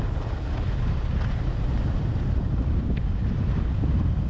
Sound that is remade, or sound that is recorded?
recorded